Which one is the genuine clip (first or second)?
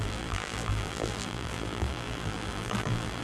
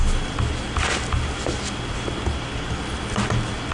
second